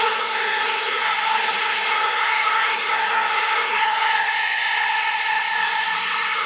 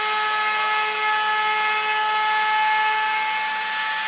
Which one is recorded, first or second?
second